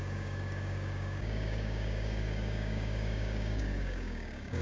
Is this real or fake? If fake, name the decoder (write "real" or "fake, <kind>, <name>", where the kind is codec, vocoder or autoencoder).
fake, codec, DAC